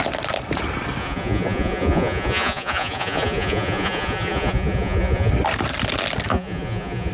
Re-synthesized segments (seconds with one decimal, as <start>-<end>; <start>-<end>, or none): 1.0-5.3; 6.3-7.1

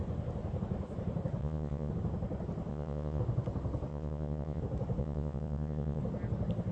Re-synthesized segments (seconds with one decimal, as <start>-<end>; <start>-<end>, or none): 1.4-1.9; 2.7-3.2; 3.9-4.6; 5.0-6.0

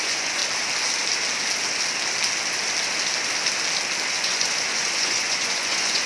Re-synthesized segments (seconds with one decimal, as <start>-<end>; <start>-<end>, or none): 0.0-0.4; 4.1-6.1

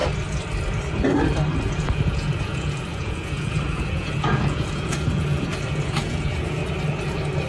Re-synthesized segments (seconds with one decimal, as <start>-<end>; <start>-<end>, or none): 1.7-6.6